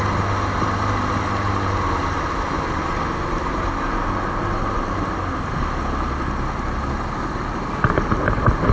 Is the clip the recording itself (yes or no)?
yes